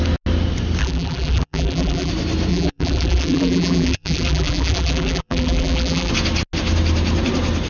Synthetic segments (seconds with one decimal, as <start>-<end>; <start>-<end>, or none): 0.8-2.1; 2.5-6.1